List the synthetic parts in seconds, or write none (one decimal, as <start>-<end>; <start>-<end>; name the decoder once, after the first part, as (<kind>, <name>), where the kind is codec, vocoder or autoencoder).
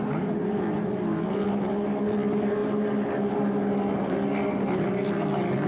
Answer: none